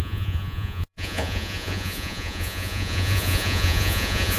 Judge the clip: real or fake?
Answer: fake